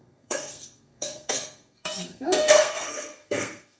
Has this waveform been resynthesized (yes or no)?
yes